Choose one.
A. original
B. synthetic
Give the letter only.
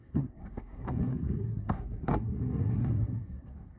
B